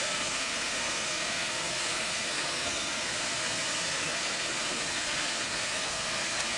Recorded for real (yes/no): no